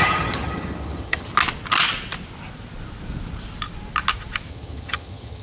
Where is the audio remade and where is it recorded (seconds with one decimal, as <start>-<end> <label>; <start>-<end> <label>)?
0.0-1.3 remade; 1.3-4.5 recorded; 4.5-5.4 remade